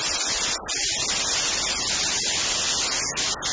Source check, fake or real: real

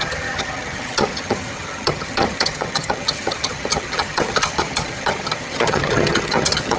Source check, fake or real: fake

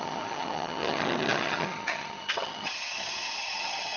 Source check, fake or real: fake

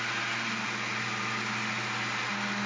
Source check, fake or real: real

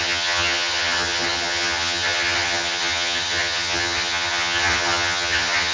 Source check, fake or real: fake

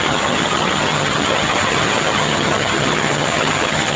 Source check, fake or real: fake